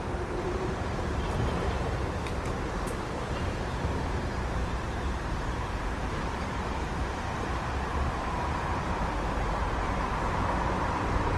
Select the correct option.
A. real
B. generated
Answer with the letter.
B